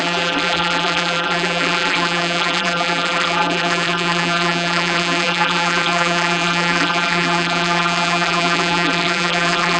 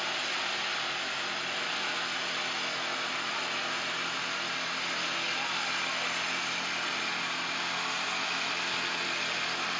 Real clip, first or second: second